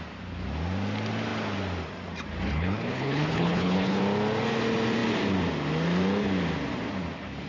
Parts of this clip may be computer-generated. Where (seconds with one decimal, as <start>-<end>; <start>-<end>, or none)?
2.5-4.0

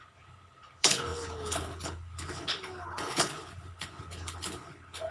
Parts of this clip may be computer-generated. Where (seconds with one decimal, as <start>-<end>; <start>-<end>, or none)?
0.0-5.1

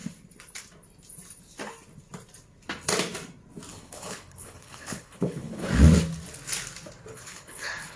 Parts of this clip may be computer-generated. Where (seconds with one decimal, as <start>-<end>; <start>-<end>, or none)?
3.7-5.7; 7.1-8.0

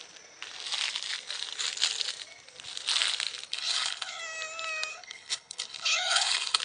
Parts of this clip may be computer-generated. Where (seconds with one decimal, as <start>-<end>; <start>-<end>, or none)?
3.5-4.2; 4.9-6.6